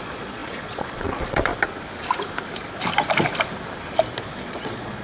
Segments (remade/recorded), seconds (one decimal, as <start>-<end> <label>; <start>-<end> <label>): 0.0-1.5 remade; 1.5-4.5 recorded; 4.5-5.0 remade